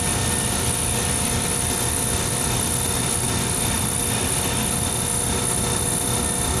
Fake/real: real